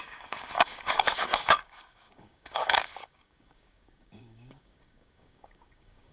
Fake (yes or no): yes